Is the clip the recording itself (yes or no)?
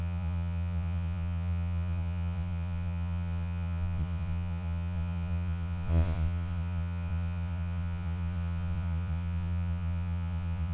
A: no